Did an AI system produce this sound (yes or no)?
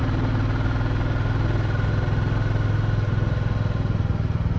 no